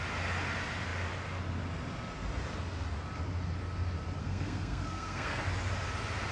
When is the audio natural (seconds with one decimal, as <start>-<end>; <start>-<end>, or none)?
0.0-4.2; 5.4-6.3